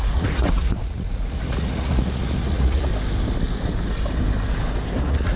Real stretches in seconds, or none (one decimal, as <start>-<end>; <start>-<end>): 2.9-5.0